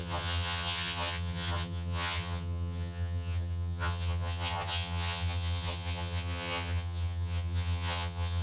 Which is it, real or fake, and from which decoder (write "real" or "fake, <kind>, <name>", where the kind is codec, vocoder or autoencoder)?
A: fake, vocoder, HiFi-GAN